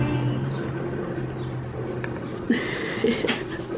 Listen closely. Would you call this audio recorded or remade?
recorded